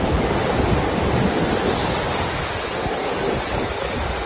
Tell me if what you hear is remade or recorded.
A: recorded